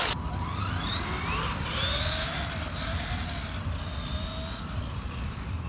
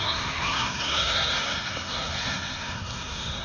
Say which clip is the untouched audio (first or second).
first